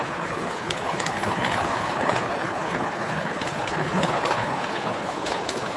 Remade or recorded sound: remade